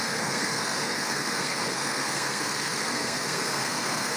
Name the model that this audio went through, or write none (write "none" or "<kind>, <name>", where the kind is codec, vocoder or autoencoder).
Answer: codec, SNAC